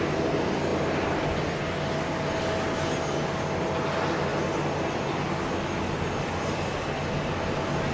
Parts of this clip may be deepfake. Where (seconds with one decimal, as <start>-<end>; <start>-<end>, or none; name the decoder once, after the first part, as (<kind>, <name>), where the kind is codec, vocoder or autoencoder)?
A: none